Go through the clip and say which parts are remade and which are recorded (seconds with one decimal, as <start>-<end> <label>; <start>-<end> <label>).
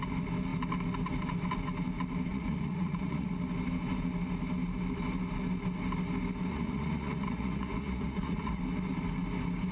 0.0-2.3 recorded; 2.3-3.3 remade; 3.3-6.5 recorded; 6.5-8.6 remade; 8.6-9.7 recorded